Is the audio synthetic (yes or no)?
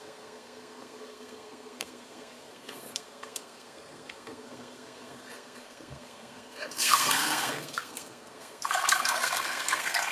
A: yes